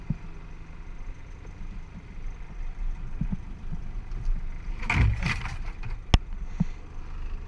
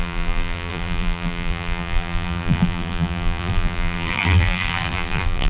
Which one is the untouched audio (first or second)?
first